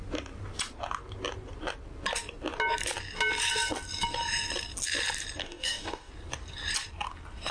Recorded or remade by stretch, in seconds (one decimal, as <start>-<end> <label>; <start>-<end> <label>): 0.0-5.4 recorded; 5.4-6.1 remade; 6.1-7.5 recorded